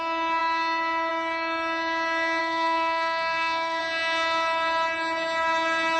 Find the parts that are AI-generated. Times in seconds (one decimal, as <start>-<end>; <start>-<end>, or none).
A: 2.4-3.8